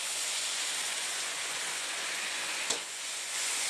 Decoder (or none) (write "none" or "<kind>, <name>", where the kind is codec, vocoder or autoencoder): vocoder, Vocos